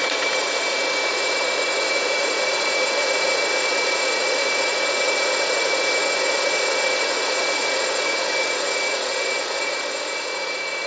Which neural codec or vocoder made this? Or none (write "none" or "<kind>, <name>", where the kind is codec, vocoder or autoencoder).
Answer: vocoder, Vocos